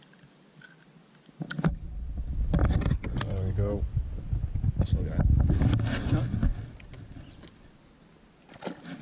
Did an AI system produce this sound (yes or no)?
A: no